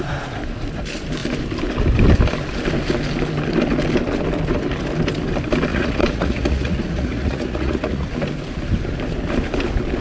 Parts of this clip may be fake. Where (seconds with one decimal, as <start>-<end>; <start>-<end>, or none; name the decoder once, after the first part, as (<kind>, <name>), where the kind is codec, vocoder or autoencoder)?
5.7-8.1 (vocoder, Vocos)